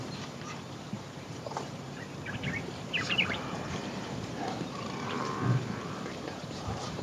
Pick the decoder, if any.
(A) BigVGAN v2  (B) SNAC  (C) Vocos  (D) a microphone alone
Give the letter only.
A